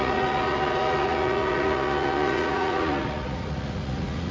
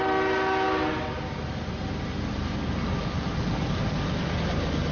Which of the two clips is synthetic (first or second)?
first